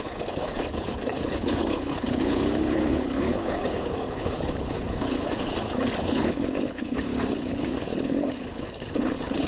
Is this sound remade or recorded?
remade